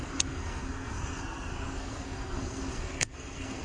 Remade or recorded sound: remade